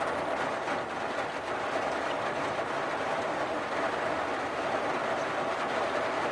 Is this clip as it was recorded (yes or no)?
yes